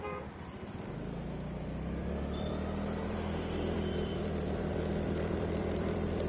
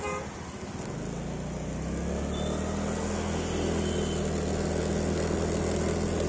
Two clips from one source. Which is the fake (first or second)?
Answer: first